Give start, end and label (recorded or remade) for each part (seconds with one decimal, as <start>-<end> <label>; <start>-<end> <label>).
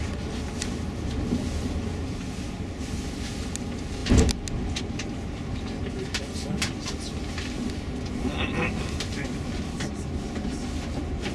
0.0-11.3 recorded